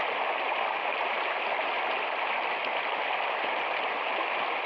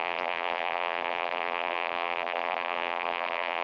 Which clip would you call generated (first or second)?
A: second